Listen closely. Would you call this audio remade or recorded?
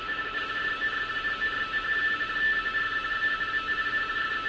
recorded